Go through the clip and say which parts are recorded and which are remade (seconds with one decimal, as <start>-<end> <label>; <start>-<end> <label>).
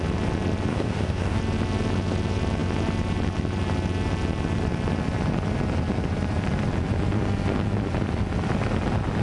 0.0-0.7 recorded; 0.7-1.4 remade; 1.4-9.2 recorded